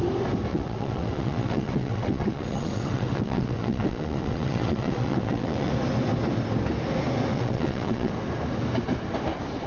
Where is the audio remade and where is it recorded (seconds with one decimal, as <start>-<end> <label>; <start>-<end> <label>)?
0.0-0.5 recorded; 0.5-5.7 remade; 5.7-7.3 recorded; 7.3-8.1 remade; 8.1-9.7 recorded